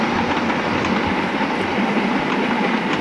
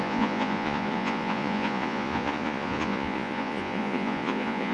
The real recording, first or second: first